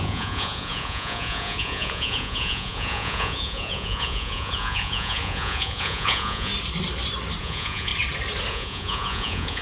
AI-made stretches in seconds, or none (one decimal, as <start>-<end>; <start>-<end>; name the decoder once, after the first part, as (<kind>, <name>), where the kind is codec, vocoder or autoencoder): 0.0-6.5 (vocoder, Vocos); 7.4-7.9; 8.5-9.6